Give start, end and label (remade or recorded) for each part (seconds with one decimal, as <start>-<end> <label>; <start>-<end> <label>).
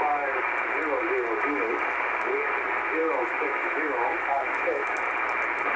0.0-3.0 recorded; 3.0-5.0 remade; 5.0-5.8 recorded